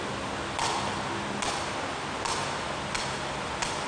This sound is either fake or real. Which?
real